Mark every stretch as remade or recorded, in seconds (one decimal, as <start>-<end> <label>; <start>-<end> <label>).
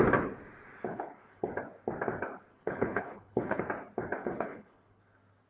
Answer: 0.0-0.9 recorded; 0.9-1.5 remade; 1.5-2.5 recorded; 2.5-3.6 remade; 3.6-4.2 recorded; 4.2-5.0 remade; 5.0-5.5 recorded